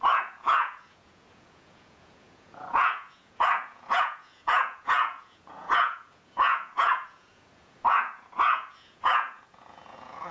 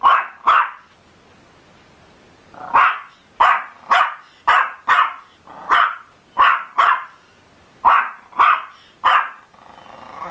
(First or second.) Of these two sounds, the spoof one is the first